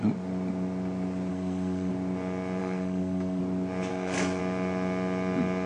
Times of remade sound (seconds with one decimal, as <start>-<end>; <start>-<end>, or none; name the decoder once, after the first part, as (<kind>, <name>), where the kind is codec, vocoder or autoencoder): 1.3-1.9 (codec, SNAC); 2.6-3.4; 3.9-4.4